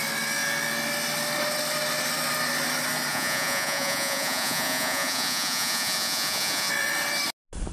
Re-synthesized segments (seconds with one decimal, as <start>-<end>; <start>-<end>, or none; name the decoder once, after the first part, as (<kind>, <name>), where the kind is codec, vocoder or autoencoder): 3.1-6.7 (vocoder, Vocos)